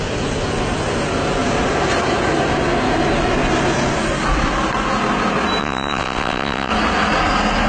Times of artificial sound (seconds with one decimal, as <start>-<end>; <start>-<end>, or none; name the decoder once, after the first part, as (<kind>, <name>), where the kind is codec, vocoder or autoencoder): 5.6-6.7 (vocoder, WaveNeXt)